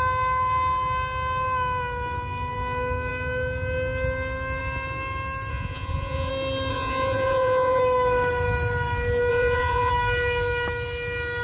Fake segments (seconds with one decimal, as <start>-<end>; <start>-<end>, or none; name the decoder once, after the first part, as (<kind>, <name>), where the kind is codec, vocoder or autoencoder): 5.5-6.3 (vocoder, Vocos); 6.7-7.8; 9.3-9.9